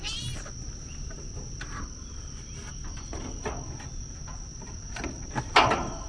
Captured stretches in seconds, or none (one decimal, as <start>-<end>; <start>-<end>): 0.0-6.1